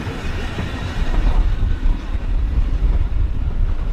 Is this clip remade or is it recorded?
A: remade